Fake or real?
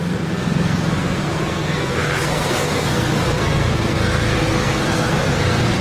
fake